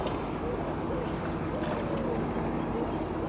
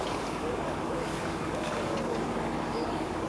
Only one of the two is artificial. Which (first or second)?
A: second